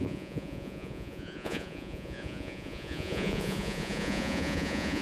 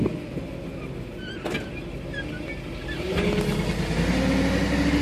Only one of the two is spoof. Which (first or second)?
first